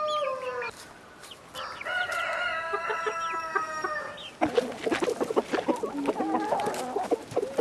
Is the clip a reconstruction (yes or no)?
no